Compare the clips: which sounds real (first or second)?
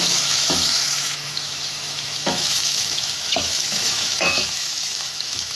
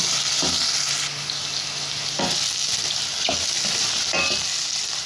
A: second